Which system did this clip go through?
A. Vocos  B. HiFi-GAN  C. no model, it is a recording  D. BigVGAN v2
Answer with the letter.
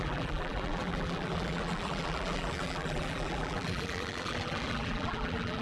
D